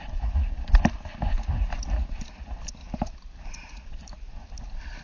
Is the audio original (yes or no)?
yes